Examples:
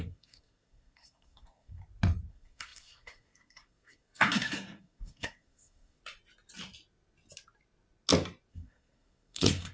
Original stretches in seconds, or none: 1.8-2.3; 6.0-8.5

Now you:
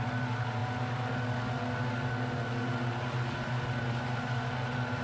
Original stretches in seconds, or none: 0.0-5.0

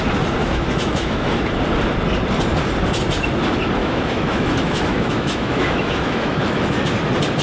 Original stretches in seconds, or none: 0.0-0.4; 1.4-3.8; 6.8-7.4

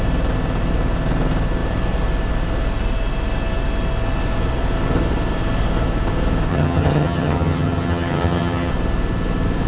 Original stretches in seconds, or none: 0.0-6.5; 8.7-9.7

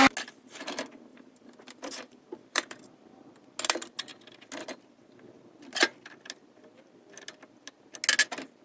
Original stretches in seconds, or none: 0.0-1.1; 3.2-8.6

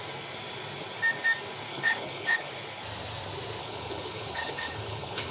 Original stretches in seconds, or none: 0.0-1.7; 2.5-3.6